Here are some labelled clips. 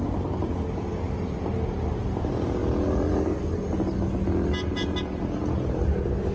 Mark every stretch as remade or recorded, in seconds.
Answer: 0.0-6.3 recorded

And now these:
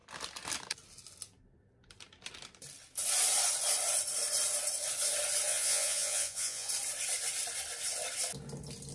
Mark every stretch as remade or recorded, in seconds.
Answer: 0.0-5.5 recorded; 5.5-6.7 remade; 6.7-8.9 recorded

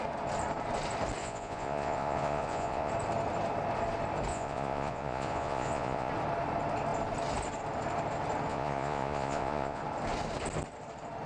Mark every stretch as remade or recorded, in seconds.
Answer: 0.0-1.2 recorded; 1.2-2.9 remade; 2.9-4.3 recorded; 4.3-6.1 remade; 6.1-8.5 recorded; 8.5-9.8 remade; 9.8-11.3 recorded

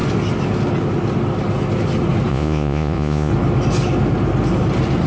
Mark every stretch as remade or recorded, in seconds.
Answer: 0.0-2.3 recorded; 2.3-3.3 remade; 3.3-5.1 recorded

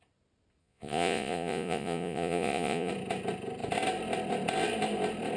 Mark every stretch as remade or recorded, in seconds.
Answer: 0.0-0.6 recorded; 0.6-2.9 remade; 2.9-5.4 recorded

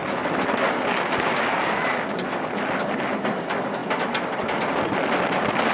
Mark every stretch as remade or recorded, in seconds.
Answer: 0.0-5.7 recorded